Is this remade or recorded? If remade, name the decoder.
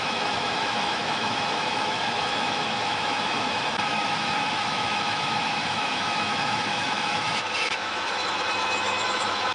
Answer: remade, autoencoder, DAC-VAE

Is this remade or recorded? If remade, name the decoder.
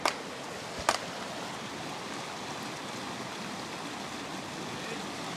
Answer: recorded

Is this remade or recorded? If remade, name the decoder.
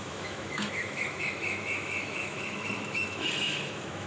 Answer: remade, autoencoder, DAC-VAE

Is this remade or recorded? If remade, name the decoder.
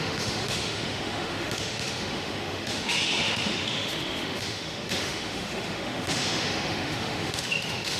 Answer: remade, autoencoder, DAC-VAE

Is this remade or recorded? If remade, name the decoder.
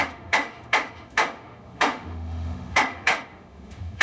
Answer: remade, autoencoder, DAC-VAE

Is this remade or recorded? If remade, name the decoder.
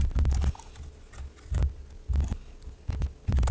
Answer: recorded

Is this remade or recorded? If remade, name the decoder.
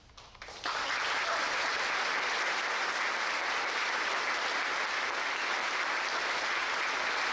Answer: recorded